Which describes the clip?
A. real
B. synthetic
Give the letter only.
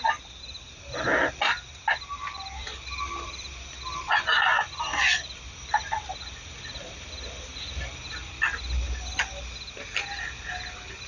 A